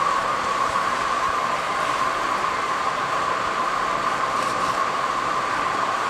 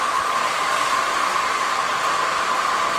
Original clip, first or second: second